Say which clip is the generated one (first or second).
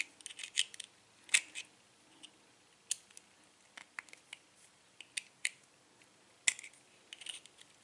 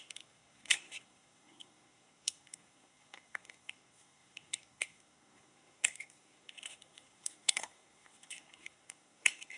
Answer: second